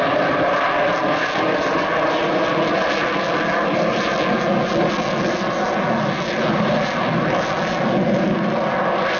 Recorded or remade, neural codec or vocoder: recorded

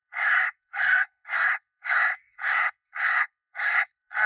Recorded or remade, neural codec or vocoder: remade, codec, SNAC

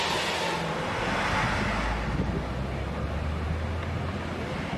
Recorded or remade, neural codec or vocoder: recorded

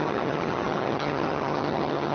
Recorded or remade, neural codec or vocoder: remade, vocoder, HiFi-GAN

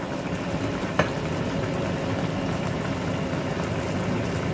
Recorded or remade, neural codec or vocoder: recorded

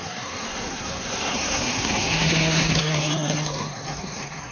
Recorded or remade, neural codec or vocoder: remade, codec, SNAC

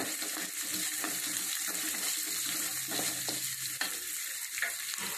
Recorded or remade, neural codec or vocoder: recorded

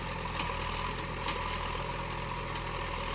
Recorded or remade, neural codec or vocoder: recorded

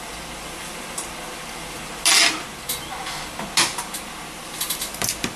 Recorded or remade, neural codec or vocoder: recorded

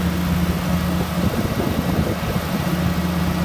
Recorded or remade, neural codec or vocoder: recorded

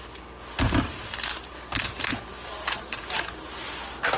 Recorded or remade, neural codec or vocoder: recorded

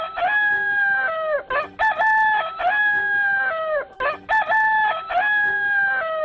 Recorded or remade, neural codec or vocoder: recorded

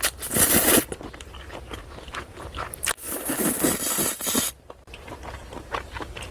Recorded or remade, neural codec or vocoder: remade, vocoder, BigVGAN v2